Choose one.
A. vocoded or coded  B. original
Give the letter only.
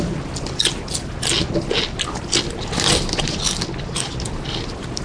B